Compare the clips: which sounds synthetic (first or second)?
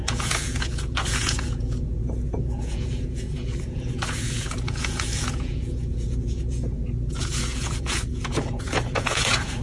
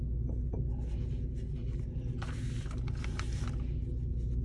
first